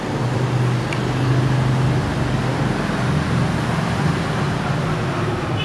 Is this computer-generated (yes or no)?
no